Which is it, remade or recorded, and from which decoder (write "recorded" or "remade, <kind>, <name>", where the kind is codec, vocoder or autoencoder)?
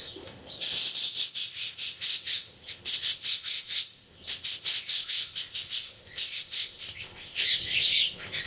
remade, codec, ZipCodec